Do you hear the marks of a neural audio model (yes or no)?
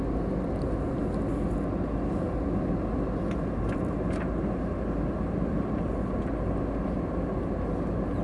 no